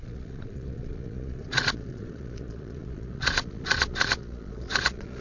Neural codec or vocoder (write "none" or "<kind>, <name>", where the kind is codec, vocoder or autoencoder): vocoder, Vocos